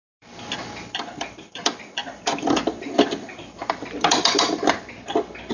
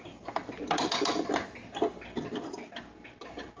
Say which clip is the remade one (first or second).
first